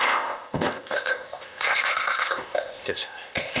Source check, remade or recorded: remade